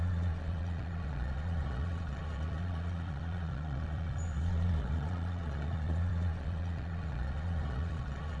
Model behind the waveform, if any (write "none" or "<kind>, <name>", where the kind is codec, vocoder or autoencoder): vocoder, Vocos